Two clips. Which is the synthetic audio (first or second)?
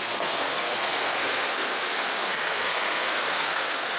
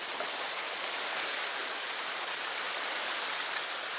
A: first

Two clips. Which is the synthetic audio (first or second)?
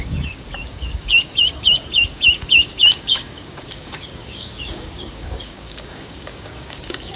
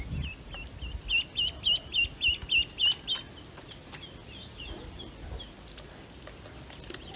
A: first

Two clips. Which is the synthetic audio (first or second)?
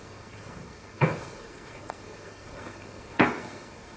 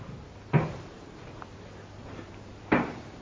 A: first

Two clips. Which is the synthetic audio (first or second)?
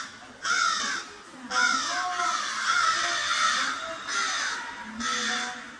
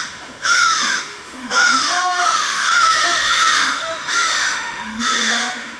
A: second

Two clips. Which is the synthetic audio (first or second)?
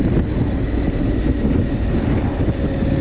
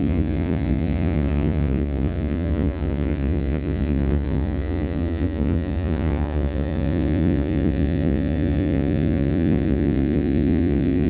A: second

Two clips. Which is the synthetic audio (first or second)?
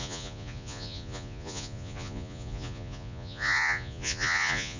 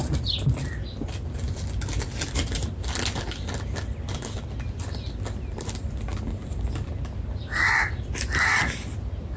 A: first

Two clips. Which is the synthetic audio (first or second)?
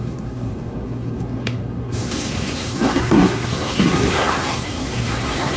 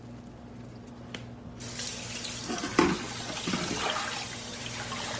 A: first